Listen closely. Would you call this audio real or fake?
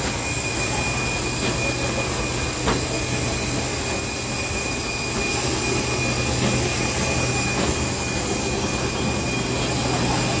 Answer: real